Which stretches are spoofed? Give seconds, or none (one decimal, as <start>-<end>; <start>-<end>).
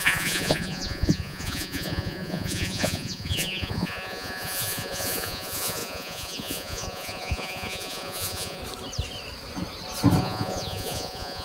0.0-8.6; 10.2-11.4